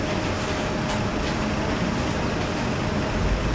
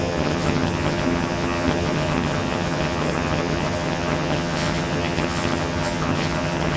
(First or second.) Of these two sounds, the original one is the first